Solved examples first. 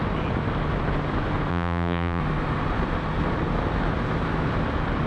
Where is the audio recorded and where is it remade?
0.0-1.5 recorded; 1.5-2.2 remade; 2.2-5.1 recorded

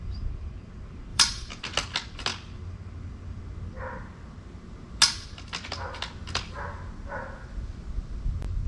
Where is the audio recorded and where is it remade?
0.0-1.1 recorded; 1.1-1.6 remade; 1.6-8.7 recorded

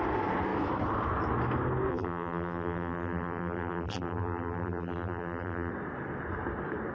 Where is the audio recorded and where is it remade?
0.0-1.9 recorded; 1.9-5.7 remade; 5.7-6.9 recorded

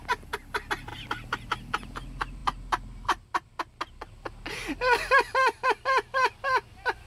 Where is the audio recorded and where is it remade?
0.0-0.9 recorded; 0.9-1.5 remade; 1.5-7.1 recorded

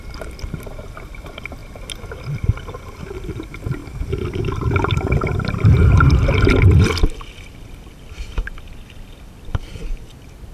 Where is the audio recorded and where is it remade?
0.0-10.5 recorded